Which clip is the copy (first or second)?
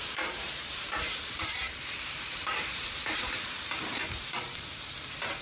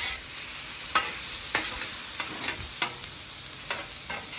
first